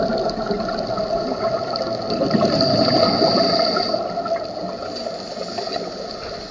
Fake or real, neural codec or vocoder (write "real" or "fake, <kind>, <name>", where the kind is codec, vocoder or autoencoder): real